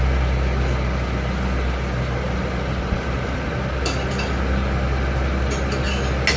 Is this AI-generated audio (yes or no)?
no